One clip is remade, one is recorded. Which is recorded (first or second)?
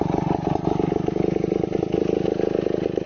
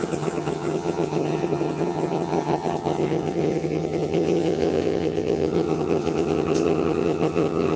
first